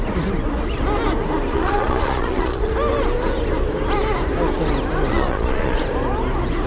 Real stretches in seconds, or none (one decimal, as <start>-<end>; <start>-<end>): 0.0-1.5; 2.7-5.1; 5.8-6.7